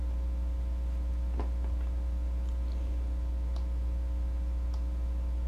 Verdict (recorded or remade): recorded